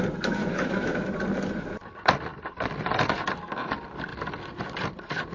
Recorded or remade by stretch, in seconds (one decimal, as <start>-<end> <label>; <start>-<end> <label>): 0.0-0.4 recorded; 0.4-1.1 remade; 1.1-5.3 recorded